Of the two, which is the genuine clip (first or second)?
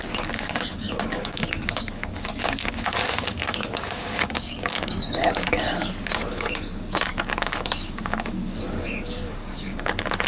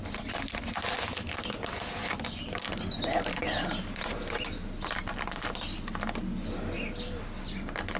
second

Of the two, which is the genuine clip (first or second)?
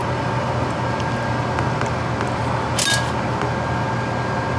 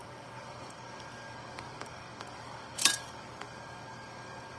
first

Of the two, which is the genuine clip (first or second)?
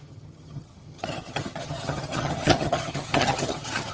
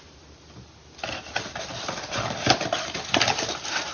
second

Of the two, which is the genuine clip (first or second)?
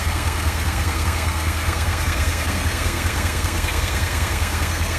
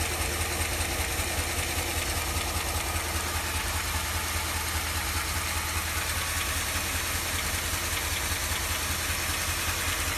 second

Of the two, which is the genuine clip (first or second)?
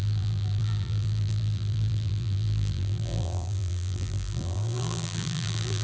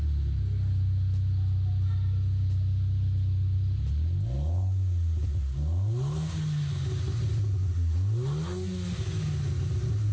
second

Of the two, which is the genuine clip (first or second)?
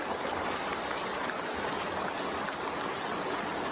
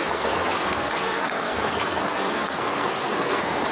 first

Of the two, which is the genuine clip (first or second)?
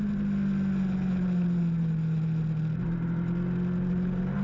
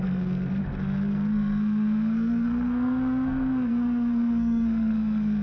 first